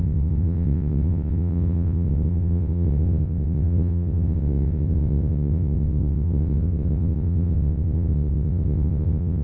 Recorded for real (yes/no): no